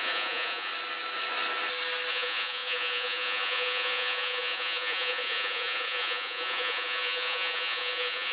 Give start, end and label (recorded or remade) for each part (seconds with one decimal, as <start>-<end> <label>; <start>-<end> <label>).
0.0-0.7 remade; 0.7-2.1 recorded; 2.1-8.3 remade